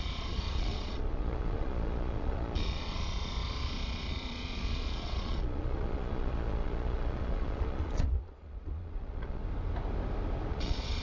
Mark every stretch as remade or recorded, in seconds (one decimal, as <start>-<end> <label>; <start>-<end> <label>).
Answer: 0.0-9.4 remade; 9.4-10.5 recorded; 10.5-11.0 remade